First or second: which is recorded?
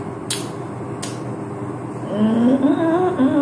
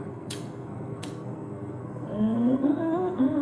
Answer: first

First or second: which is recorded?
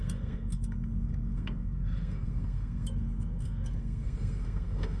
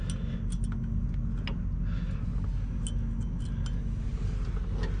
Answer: second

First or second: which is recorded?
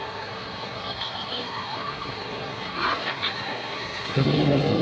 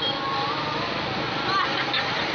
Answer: second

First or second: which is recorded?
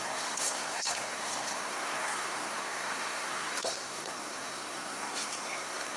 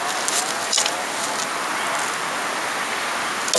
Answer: second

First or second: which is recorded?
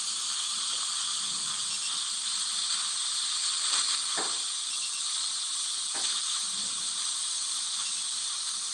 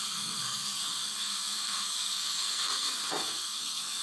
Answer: first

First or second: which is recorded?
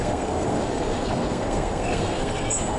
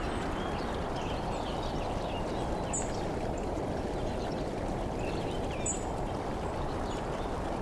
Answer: second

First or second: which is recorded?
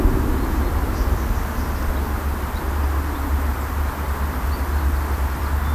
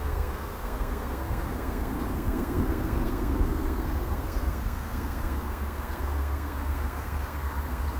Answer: first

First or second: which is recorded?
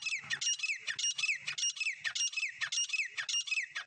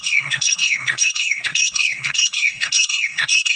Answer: first